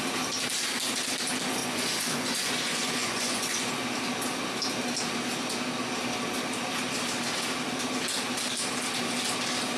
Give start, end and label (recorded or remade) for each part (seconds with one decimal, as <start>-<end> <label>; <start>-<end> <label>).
0.0-1.6 recorded; 1.6-3.7 remade; 3.7-9.8 recorded